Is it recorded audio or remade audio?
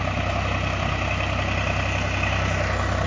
recorded